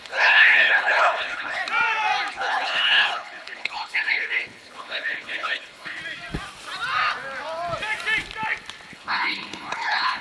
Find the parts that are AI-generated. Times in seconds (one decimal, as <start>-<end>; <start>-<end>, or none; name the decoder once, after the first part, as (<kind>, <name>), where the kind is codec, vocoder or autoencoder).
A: 0.0-1.6 (codec, HILCodec); 2.3-6.0; 8.9-10.2